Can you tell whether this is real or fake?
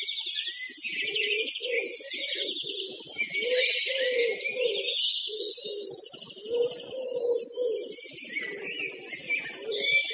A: real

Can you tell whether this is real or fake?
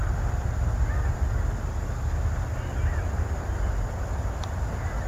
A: real